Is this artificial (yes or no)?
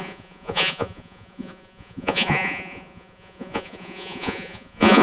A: yes